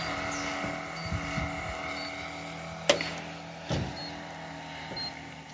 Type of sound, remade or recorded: recorded